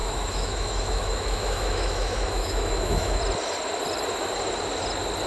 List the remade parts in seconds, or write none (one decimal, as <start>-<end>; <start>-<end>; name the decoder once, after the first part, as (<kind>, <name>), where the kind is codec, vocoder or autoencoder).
0.0-3.2 (autoencoder, DAC-VAE)